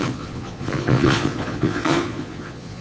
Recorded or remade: remade